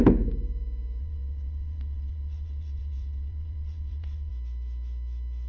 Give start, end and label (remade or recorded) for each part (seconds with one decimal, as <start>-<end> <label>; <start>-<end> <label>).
0.0-1.0 recorded; 1.0-4.3 remade; 4.3-5.5 recorded